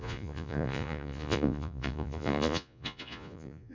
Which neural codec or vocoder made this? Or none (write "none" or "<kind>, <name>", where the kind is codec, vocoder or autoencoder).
vocoder, Vocos